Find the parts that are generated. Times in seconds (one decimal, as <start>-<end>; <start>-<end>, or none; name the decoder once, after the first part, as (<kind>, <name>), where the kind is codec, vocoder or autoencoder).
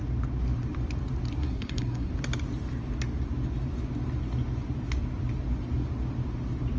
1.4-2.1 (codec, SNAC)